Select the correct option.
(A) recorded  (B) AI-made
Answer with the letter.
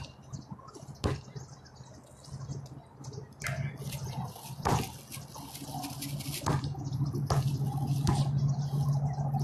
A